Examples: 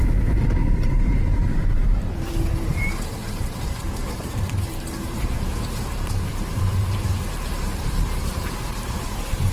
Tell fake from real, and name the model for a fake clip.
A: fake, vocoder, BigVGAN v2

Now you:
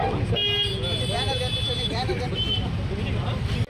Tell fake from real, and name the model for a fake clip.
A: real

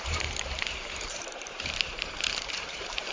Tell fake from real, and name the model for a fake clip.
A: fake, vocoder, BigVGAN v2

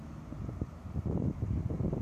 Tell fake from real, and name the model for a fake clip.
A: fake, vocoder, BigVGAN v2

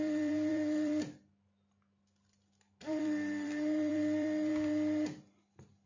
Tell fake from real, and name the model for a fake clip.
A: fake, vocoder, BigVGAN v2